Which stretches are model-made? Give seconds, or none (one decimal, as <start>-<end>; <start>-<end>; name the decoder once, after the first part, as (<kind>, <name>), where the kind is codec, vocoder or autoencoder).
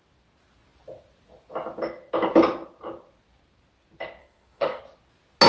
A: 4.2-4.8 (codec, SNAC)